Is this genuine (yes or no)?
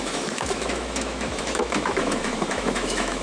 no